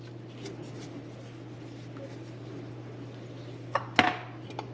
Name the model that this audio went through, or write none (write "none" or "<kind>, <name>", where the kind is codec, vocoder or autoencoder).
none